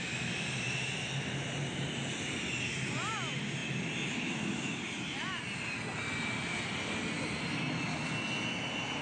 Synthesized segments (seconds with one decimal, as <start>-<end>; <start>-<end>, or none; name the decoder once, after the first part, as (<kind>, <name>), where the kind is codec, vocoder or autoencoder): none